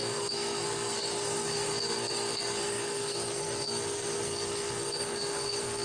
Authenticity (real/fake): fake